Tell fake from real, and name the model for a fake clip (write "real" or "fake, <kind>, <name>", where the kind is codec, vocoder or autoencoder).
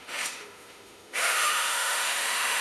fake, autoencoder, DAC-VAE